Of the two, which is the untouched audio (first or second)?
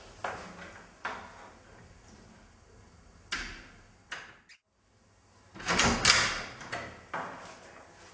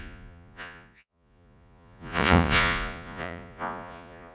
first